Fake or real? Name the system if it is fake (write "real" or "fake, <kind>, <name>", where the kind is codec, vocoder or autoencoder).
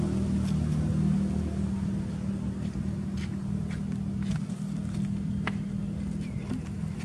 real